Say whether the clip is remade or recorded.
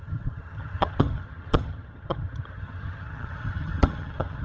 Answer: remade